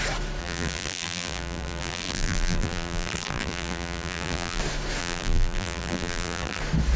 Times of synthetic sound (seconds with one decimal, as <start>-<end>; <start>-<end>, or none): 0.4-4.6; 5.0-6.6